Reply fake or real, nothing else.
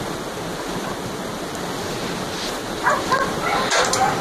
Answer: real